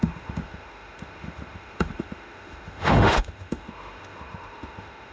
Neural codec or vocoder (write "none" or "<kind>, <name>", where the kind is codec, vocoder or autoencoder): autoencoder, DAC-VAE